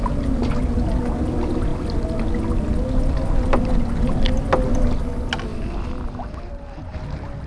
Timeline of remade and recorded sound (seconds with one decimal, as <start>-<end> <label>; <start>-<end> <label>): 0.0-1.7 recorded; 1.7-2.2 remade; 2.2-7.5 recorded